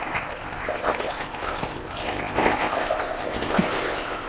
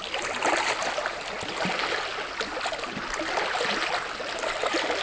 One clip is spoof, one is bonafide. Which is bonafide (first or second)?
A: second